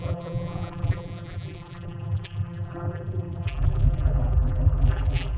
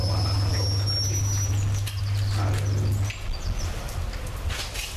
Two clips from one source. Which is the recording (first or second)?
second